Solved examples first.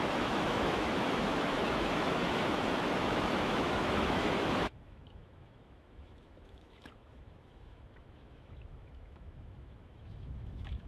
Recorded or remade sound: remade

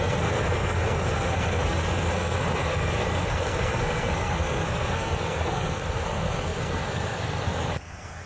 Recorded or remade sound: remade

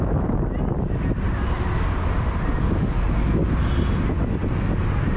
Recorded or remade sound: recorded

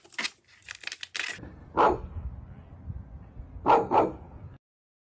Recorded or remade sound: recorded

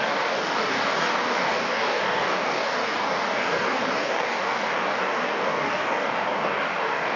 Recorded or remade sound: remade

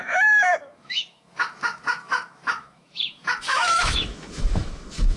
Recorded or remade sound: remade